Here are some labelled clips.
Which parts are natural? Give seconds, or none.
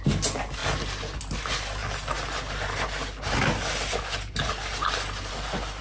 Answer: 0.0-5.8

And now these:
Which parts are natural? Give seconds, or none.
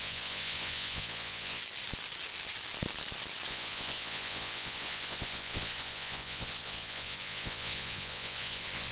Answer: 1.6-3.5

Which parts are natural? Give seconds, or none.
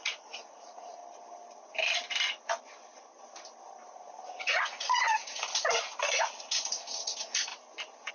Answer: 1.0-4.0; 5.5-6.4; 7.5-8.1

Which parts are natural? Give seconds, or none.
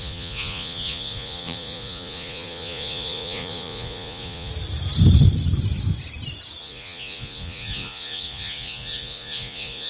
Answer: 4.5-6.6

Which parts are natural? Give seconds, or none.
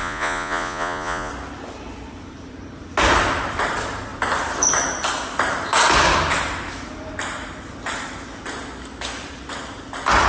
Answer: 1.3-10.3